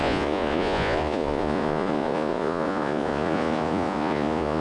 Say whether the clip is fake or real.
fake